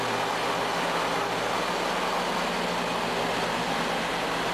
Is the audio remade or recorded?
recorded